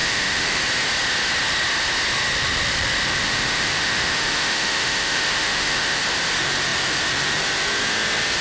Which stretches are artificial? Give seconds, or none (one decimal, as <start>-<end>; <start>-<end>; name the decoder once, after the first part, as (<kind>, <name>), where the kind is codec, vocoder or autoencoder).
0.0-0.6 (autoencoder, DAC-VAE); 3.2-6.0